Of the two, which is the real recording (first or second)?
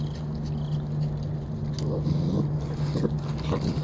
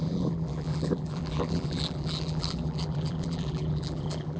first